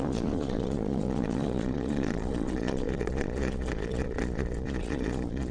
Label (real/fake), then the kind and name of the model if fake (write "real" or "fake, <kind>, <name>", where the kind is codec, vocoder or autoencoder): fake, vocoder, Vocos